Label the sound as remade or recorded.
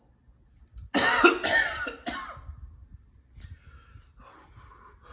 recorded